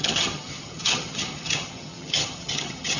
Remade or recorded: remade